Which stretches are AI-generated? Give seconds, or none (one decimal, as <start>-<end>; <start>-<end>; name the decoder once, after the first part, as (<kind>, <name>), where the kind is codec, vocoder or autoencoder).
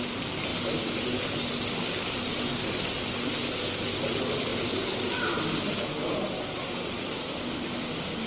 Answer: 4.5-5.1 (vocoder, BigVGAN v2)